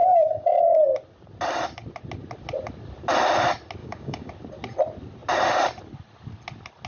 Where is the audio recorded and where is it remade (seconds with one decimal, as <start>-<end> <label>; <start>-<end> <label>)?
0.0-0.6 remade; 0.6-3.8 recorded; 3.8-4.3 remade; 4.3-6.9 recorded